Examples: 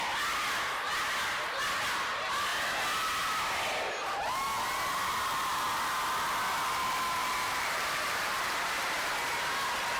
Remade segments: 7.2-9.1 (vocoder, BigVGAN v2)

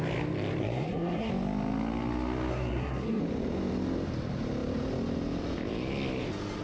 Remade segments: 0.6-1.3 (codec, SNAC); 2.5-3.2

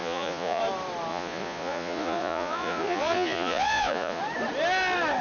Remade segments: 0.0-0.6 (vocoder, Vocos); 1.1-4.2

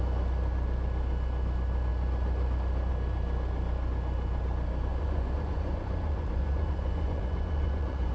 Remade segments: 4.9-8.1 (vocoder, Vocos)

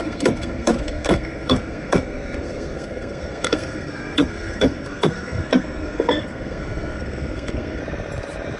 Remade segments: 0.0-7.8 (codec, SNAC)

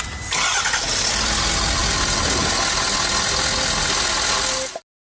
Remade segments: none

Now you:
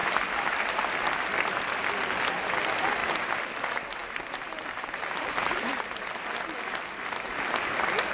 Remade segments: 0.0-0.8 (vocoder, BigVGAN v2); 3.0-3.6; 4.0-5.7